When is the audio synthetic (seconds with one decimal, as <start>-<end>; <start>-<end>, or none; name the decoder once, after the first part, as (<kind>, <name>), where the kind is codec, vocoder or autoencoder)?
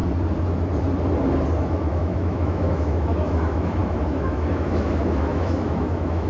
1.6-6.3 (autoencoder, DAC-VAE)